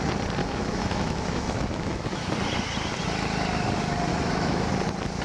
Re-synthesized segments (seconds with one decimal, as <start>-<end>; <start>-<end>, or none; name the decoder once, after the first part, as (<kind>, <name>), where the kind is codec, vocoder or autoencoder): 0.4-2.3 (autoencoder, DAC-VAE); 4.1-4.7